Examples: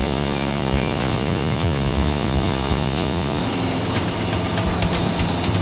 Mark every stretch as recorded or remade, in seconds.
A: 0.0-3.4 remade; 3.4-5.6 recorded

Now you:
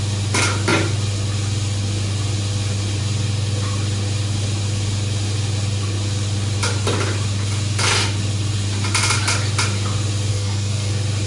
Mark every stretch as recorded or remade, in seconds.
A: 0.0-10.3 recorded; 10.3-10.9 remade; 10.9-11.3 recorded

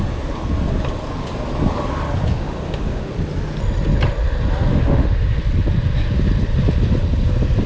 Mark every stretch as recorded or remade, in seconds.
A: 0.0-2.3 recorded; 2.3-3.1 remade; 3.1-4.7 recorded; 4.7-5.4 remade; 5.4-7.7 recorded

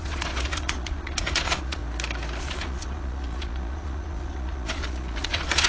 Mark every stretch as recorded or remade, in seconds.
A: 0.0-1.8 remade; 1.8-2.4 recorded; 2.4-5.7 remade

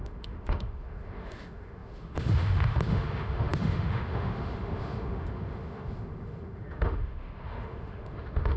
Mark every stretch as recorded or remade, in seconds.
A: 0.0-8.6 remade

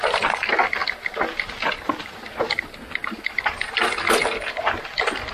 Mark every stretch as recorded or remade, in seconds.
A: 0.0-5.3 recorded

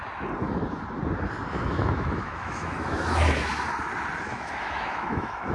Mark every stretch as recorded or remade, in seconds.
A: 0.0-1.5 recorded; 1.5-3.5 remade; 3.5-4.3 recorded; 4.3-5.5 remade